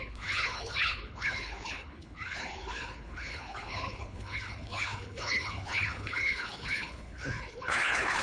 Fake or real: fake